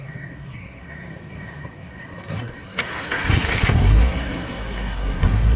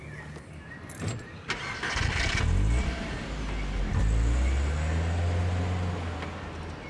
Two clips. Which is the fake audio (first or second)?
first